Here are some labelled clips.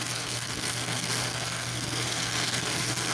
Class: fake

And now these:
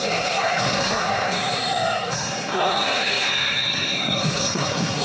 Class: fake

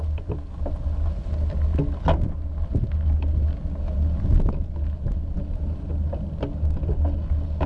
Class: real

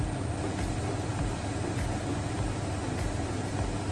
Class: real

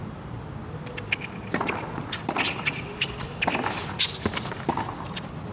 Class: real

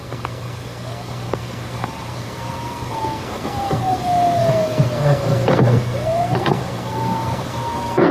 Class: fake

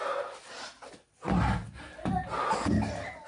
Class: real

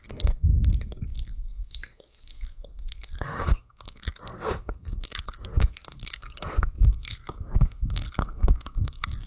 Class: fake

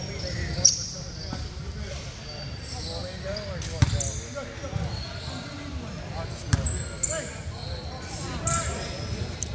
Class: real